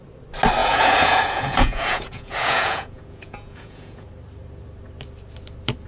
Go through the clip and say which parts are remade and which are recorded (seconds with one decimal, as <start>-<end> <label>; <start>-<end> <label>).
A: 0.0-0.6 recorded; 0.6-4.1 remade; 4.1-5.9 recorded